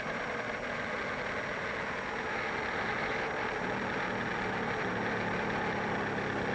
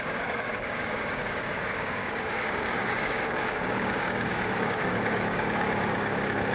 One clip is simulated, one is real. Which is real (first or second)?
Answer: first